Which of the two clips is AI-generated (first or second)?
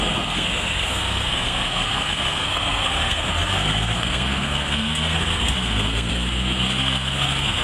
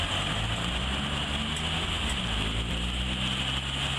first